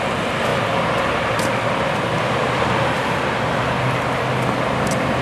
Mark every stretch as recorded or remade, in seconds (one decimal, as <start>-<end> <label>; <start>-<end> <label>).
0.0-5.2 recorded